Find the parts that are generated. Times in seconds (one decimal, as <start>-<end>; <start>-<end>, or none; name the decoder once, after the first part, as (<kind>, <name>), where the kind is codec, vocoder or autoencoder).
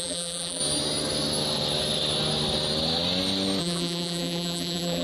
0.0-0.6 (vocoder, BigVGAN v2); 3.6-5.0